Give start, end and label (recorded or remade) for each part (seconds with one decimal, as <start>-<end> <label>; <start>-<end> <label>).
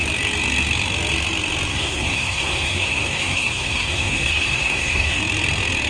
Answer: 0.0-1.7 recorded; 1.7-5.2 remade; 5.2-5.9 recorded